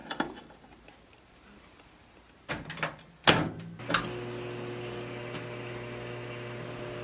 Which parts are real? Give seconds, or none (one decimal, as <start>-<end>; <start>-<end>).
2.5-7.0